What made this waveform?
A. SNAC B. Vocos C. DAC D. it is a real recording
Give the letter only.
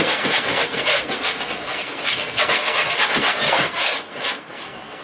A